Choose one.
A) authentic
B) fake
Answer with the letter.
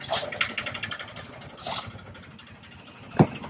A